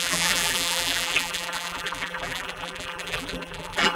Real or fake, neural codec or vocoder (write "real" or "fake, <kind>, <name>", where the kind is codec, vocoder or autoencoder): fake, vocoder, BigVGAN v2